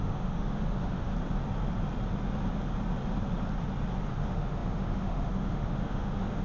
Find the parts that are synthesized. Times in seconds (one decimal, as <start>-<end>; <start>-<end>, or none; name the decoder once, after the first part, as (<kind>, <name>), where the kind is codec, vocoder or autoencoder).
0.0-1.1 (autoencoder, DAC-VAE); 4.1-6.4